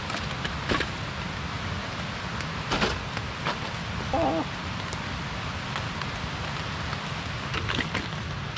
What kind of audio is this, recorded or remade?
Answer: recorded